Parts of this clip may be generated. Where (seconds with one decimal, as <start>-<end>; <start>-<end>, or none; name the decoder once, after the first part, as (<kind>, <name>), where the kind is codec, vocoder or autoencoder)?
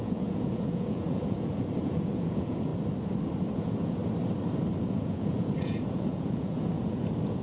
0.0-2.7 (vocoder, Vocos); 3.5-4.0; 4.8-7.4